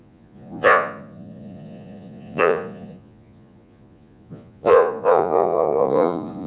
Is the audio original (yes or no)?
no